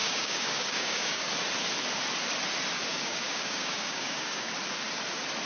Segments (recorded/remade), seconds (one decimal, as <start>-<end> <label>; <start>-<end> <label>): 0.0-1.3 remade; 1.3-2.9 recorded; 2.9-4.5 remade; 4.5-5.5 recorded

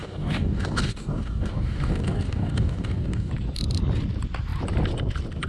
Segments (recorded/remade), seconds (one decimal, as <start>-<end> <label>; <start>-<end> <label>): 0.0-3.3 remade; 3.3-5.5 recorded

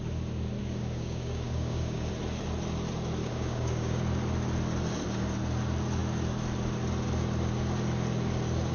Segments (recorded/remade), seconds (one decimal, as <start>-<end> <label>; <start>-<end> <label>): 0.0-0.6 recorded; 0.6-2.1 remade; 2.1-3.2 recorded; 3.2-4.0 remade; 4.0-8.7 recorded

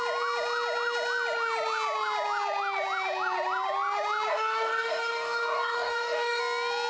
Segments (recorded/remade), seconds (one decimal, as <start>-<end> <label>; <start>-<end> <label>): 0.0-4.3 recorded; 4.3-6.4 remade; 6.4-6.9 recorded

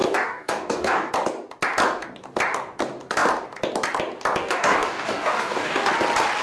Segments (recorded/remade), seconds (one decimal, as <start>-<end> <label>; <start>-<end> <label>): 0.0-1.1 remade; 1.1-4.4 recorded; 4.4-5.9 remade; 5.9-6.4 recorded